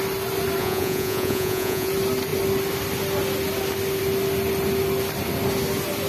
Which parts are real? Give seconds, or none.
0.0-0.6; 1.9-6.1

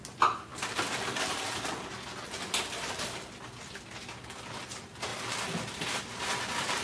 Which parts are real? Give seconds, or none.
0.0-6.8

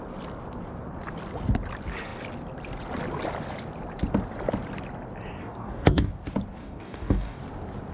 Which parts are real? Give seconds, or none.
0.0-5.4; 6.1-6.6; 7.4-7.9